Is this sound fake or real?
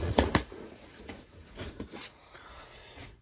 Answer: fake